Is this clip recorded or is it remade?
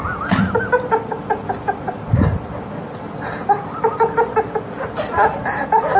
recorded